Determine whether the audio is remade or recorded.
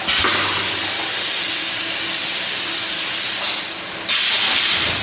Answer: recorded